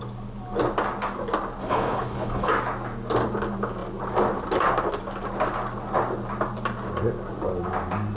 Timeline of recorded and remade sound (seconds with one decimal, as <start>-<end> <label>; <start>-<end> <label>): 0.0-1.6 recorded; 1.6-2.5 remade; 2.5-8.2 recorded